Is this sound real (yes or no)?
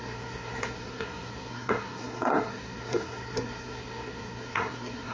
no